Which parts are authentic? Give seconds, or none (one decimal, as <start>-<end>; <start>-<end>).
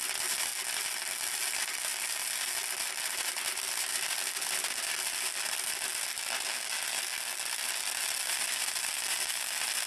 0.5-1.2; 1.9-3.2; 5.9-7.6